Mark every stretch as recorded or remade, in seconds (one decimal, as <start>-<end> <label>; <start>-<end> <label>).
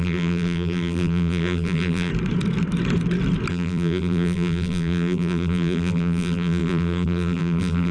0.0-2.1 remade; 2.1-3.5 recorded; 3.5-7.9 remade